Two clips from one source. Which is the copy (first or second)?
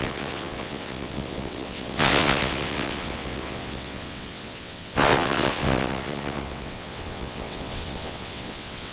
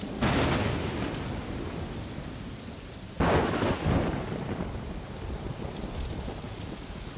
first